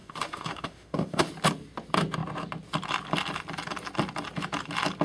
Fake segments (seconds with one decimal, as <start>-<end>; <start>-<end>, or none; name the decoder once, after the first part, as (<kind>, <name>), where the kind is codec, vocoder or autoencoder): 0.0-1.3 (autoencoder, DAC-VAE)